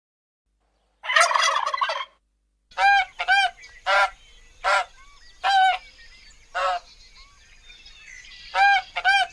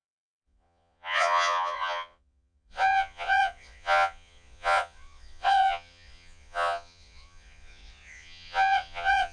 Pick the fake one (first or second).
second